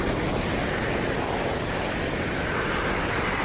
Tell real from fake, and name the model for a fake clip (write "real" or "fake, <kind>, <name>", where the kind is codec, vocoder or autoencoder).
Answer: real